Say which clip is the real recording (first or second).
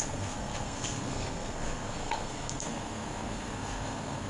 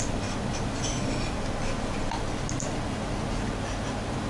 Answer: second